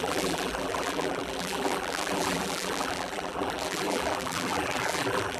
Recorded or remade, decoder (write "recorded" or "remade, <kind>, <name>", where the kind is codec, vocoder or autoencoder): remade, vocoder, BigVGAN v2